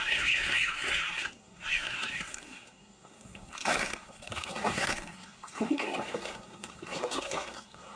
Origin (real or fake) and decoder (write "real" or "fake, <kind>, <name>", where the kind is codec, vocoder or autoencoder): fake, codec, SNAC